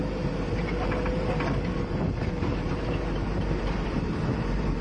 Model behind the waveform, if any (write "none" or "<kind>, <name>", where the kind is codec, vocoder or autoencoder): vocoder, BigVGAN v2